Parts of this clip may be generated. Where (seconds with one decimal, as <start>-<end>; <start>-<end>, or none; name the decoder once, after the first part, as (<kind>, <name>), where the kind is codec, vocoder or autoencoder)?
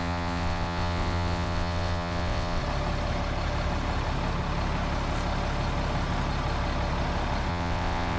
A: 0.0-2.6 (vocoder, WaveNeXt); 7.5-8.2